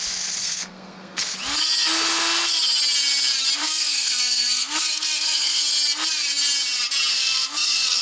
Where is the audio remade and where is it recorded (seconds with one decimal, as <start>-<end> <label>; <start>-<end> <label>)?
0.0-0.4 recorded; 0.4-1.2 remade; 1.2-3.6 recorded; 3.6-5.6 remade; 5.6-7.1 recorded; 7.1-8.0 remade